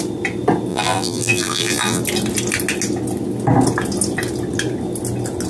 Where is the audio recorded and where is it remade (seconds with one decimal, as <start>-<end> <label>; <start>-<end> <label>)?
0.0-0.7 recorded; 0.7-2.0 remade; 2.0-5.5 recorded